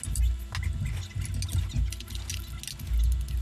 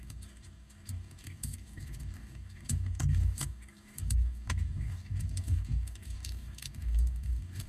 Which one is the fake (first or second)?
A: second